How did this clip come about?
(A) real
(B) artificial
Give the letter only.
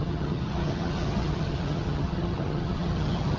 B